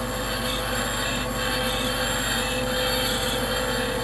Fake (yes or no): no